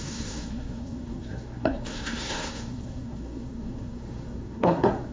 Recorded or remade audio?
remade